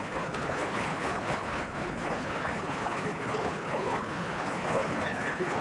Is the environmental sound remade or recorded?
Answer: remade